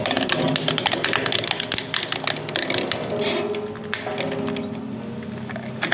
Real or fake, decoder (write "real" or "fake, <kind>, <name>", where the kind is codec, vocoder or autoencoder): real